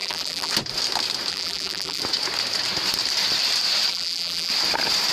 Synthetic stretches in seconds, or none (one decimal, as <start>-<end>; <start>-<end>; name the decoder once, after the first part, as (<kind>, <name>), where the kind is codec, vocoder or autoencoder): 0.0-0.5 (vocoder, BigVGAN v2); 1.3-2.0; 3.9-4.5